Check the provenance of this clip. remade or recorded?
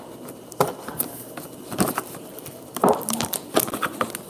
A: recorded